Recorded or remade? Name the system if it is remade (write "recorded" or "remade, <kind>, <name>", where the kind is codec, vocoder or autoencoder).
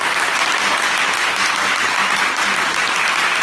recorded